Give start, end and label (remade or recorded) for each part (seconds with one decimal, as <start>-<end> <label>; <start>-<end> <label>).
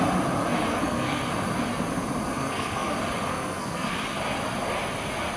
0.0-0.7 recorded; 0.7-1.3 remade; 1.3-2.4 recorded; 2.4-2.9 remade; 2.9-3.3 recorded; 3.3-3.9 remade; 3.9-5.4 recorded